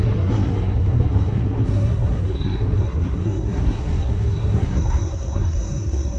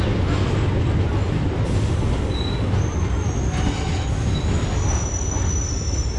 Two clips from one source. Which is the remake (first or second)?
first